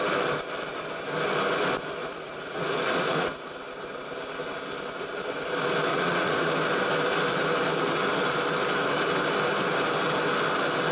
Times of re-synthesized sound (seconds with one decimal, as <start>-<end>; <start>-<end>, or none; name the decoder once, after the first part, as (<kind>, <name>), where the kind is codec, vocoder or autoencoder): 2.0-3.5 (vocoder, Vocos); 5.9-6.5